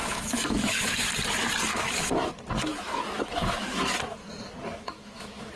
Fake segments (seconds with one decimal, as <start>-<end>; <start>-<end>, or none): 0.0-1.1; 1.7-2.3; 2.7-3.8; 4.7-5.6